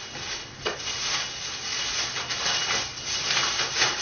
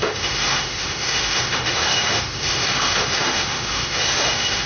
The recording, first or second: first